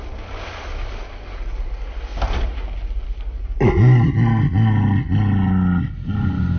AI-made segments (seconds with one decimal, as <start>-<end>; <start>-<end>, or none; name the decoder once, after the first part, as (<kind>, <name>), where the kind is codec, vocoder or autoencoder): none